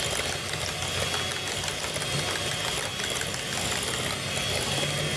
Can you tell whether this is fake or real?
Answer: real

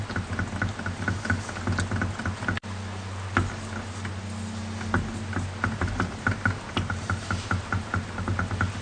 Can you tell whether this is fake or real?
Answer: real